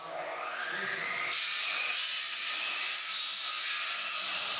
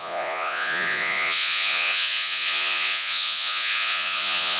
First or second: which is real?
first